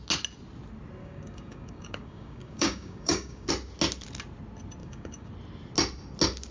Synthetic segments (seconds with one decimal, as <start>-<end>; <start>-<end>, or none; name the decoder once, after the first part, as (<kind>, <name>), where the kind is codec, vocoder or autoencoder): 1.0-3.5 (codec, DAC); 4.8-5.3